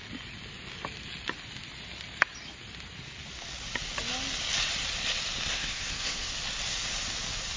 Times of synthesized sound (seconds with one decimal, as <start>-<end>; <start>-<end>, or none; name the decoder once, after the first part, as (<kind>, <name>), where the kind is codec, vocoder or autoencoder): 5.5-6.3 (codec, SNAC)